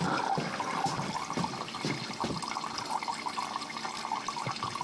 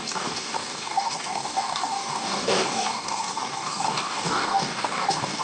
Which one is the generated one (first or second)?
second